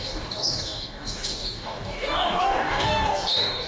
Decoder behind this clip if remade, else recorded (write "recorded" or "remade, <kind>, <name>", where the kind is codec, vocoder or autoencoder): remade, codec, DAC